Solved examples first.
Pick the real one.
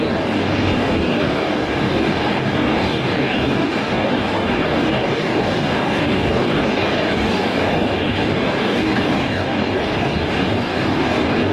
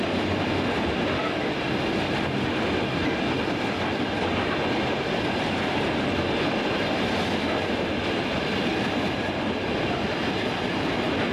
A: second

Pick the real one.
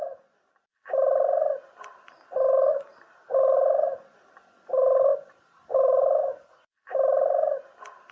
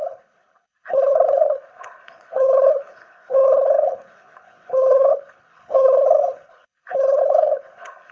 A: first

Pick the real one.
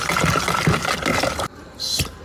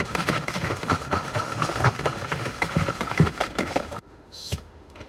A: first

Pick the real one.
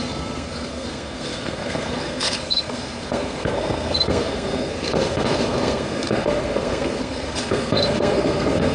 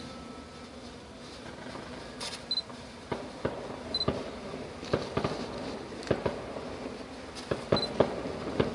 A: second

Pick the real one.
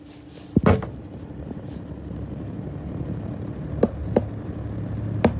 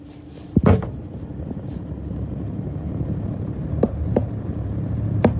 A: first